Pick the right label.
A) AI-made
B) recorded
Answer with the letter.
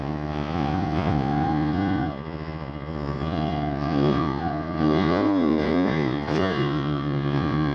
A